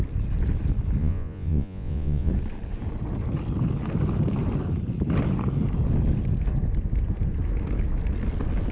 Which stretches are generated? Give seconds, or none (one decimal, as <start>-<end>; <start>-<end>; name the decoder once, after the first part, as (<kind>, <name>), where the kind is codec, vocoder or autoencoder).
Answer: 1.0-2.3 (vocoder, Vocos)